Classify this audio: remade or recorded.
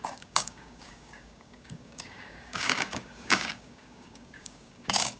remade